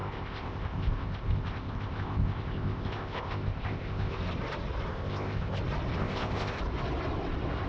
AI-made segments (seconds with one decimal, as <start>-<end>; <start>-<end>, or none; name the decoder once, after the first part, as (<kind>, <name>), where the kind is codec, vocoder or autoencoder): 0.0-4.2 (codec, ZipCodec); 4.9-5.6; 6.0-6.6